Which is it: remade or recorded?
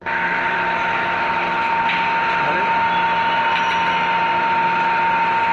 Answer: recorded